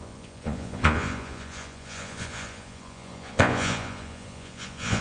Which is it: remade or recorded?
remade